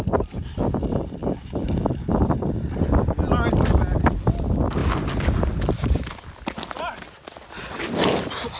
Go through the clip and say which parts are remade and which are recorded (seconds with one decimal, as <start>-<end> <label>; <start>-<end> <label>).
0.0-8.6 recorded